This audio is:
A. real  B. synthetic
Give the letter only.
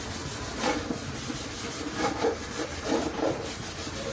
A